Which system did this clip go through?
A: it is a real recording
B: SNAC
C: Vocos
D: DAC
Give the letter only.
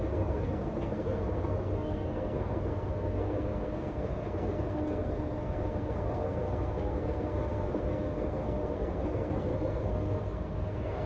B